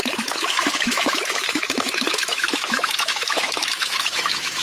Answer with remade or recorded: remade